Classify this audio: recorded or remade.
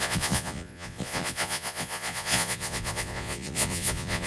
remade